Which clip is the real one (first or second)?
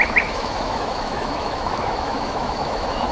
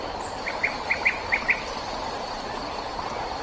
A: second